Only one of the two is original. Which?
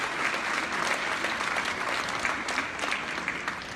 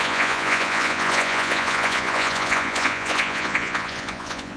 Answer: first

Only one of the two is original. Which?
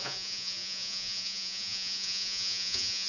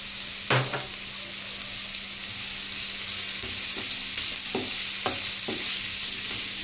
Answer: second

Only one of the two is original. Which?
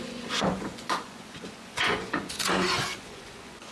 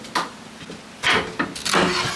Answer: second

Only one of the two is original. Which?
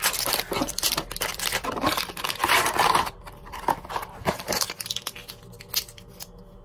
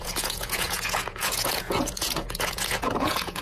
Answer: first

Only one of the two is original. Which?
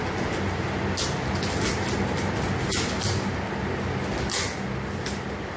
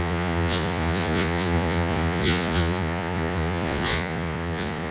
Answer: first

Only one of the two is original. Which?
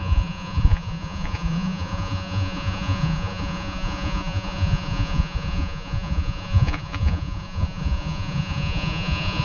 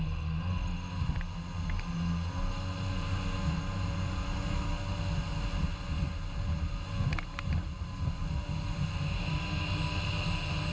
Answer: second